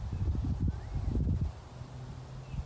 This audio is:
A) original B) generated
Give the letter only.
A